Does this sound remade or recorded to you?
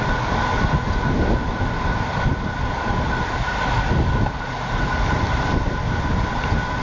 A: recorded